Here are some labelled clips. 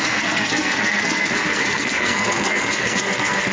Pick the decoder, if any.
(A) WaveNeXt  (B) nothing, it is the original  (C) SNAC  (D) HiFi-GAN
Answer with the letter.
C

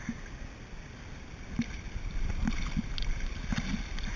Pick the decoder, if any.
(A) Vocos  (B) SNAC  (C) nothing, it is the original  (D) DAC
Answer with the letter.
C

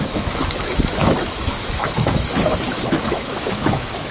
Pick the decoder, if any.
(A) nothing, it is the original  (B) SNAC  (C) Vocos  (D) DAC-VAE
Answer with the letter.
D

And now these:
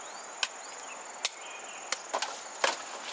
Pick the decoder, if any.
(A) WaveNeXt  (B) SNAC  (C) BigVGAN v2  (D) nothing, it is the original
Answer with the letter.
D